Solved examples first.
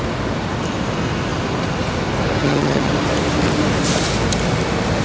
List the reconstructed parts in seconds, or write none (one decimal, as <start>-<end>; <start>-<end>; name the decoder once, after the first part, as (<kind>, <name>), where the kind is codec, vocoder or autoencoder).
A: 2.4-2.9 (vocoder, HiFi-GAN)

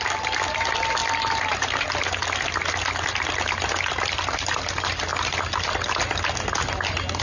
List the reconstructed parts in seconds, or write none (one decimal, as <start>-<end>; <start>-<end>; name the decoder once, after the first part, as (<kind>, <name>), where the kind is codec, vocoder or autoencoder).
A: none

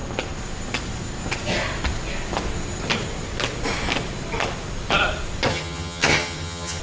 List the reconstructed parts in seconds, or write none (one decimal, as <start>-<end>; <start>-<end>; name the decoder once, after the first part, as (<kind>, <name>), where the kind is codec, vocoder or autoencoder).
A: 5.5-6.8 (vocoder, HiFi-GAN)

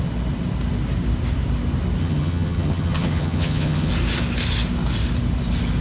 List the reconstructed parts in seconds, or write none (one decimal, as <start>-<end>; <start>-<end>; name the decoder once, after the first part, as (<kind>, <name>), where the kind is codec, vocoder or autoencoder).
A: 2.0-3.9 (vocoder, HiFi-GAN)